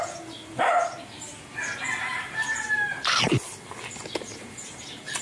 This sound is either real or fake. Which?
real